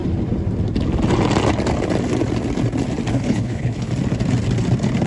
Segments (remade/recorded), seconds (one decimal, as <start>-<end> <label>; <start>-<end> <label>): 0.0-3.1 recorded; 3.1-3.9 remade; 3.9-5.1 recorded